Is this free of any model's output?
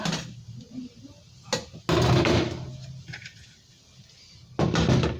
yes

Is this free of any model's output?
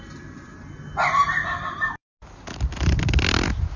yes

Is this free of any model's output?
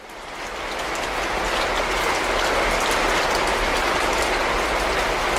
yes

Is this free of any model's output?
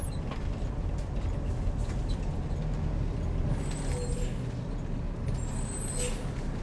yes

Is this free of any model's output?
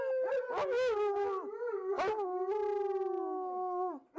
yes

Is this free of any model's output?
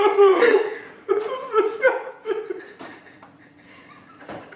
no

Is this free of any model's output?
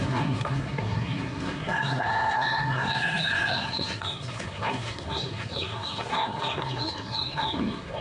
no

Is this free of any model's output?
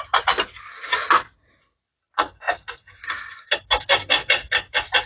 yes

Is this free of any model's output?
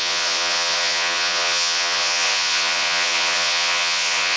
no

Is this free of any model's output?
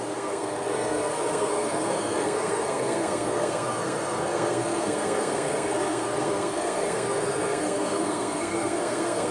no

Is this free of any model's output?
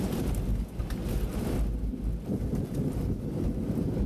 yes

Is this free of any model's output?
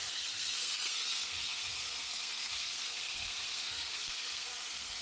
no